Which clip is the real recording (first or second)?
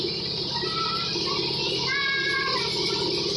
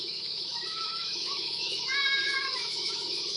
first